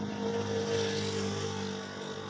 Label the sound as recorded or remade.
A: recorded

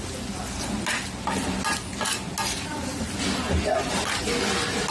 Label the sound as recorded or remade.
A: recorded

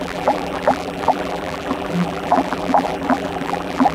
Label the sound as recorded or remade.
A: remade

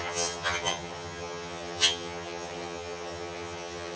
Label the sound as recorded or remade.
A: remade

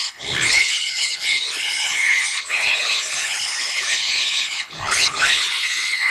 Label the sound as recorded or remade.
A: remade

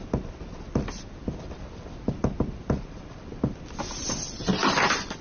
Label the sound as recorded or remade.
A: remade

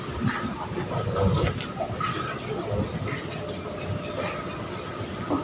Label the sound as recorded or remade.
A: recorded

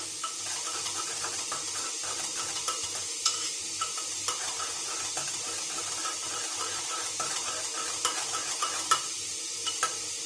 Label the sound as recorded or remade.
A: recorded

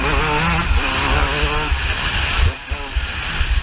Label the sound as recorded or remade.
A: recorded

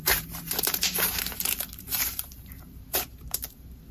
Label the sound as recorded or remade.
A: remade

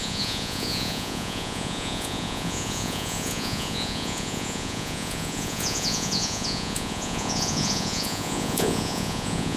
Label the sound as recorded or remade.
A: remade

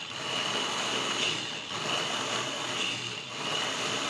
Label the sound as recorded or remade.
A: recorded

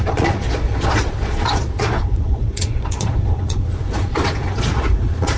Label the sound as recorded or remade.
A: remade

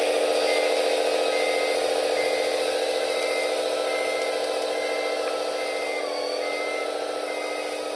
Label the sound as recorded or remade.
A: recorded